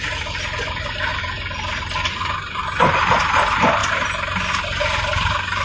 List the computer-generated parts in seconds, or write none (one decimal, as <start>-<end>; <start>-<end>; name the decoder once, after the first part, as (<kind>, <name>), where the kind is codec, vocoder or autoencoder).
none